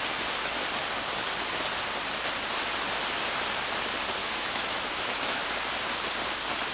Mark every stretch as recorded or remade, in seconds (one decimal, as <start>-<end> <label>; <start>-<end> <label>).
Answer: 0.0-4.2 recorded; 4.2-5.5 remade; 5.5-6.7 recorded